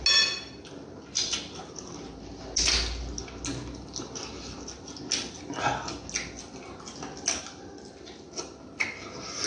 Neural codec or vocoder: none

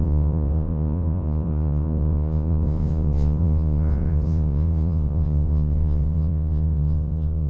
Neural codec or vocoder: vocoder, Vocos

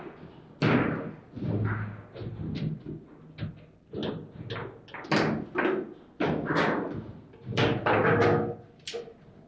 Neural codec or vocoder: none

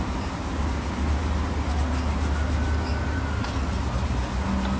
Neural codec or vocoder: none